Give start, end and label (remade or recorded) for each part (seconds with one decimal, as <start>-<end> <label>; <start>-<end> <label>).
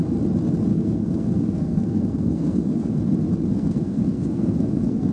0.0-0.7 recorded; 0.7-3.0 remade; 3.0-3.5 recorded; 3.5-5.1 remade